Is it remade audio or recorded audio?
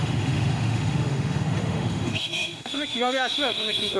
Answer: remade